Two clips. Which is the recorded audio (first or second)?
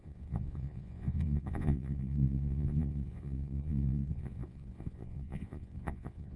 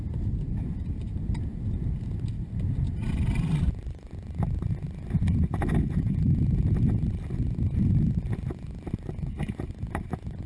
second